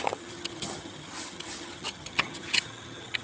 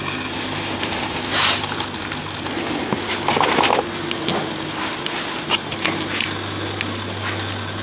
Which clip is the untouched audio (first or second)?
second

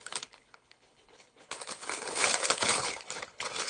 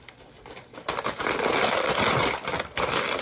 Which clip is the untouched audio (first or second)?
second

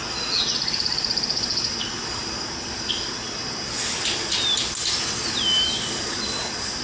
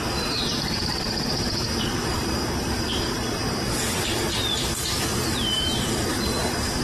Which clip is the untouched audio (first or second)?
first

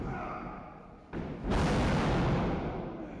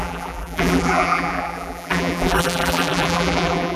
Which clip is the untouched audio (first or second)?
first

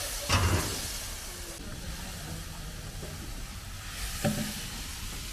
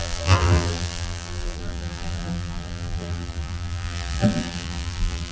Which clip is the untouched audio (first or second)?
first